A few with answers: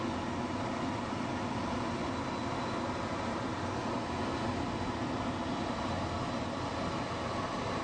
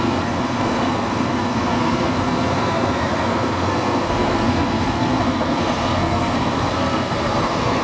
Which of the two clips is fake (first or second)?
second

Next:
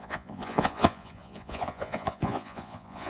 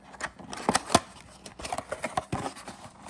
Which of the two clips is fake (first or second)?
first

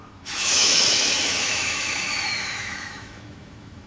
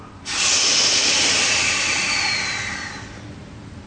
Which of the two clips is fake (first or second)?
first